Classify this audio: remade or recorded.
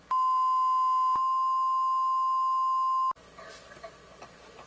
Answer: recorded